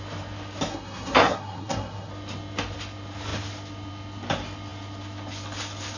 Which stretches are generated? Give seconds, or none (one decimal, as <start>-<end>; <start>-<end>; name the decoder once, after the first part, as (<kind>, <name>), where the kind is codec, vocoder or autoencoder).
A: 0.7-2.1 (codec, SNAC)